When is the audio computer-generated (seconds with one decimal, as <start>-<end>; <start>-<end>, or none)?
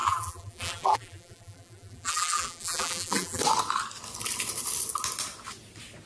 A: 0.0-3.4